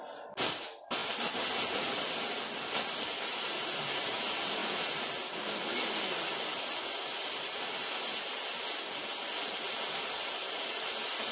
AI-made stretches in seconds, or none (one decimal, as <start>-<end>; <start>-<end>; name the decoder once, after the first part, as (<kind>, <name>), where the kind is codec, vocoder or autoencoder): none